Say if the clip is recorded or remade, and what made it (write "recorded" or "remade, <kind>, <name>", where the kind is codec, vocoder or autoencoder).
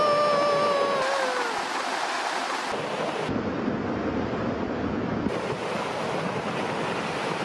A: recorded